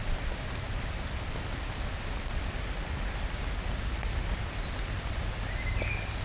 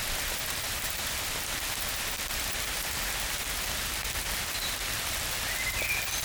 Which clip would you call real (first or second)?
first